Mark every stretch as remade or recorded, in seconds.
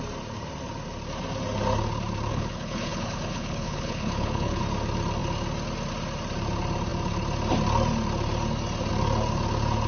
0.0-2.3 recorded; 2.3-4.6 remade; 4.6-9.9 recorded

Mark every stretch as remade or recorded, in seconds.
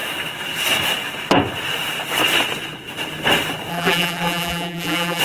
0.0-3.7 recorded; 3.7-5.2 remade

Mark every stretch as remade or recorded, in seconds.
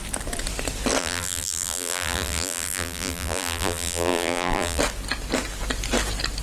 0.0-1.0 recorded; 1.0-4.8 remade; 4.8-6.4 recorded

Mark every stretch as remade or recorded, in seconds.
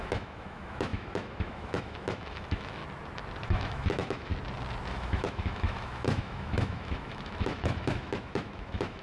0.0-2.8 remade; 2.8-3.4 recorded; 3.4-4.3 remade; 4.3-4.9 recorded; 4.9-9.0 remade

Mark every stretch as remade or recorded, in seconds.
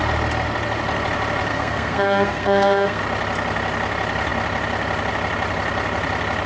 0.0-1.5 recorded; 1.5-3.0 remade; 3.0-6.5 recorded